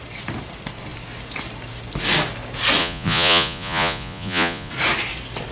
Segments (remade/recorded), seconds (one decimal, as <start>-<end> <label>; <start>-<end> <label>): 0.0-2.8 recorded; 2.8-4.7 remade; 4.7-5.5 recorded